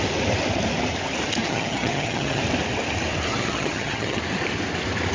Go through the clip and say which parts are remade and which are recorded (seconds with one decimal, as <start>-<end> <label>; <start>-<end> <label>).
0.0-1.4 recorded; 1.4-2.4 remade; 2.4-3.3 recorded; 3.3-4.2 remade; 4.2-5.1 recorded